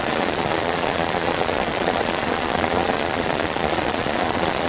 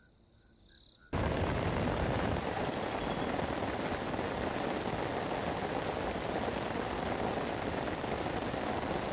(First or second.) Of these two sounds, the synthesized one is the first